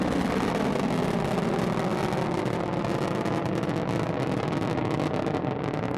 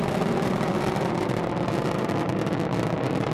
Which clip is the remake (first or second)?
second